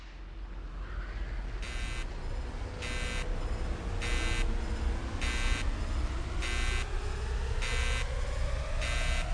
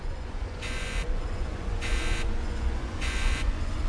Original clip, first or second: first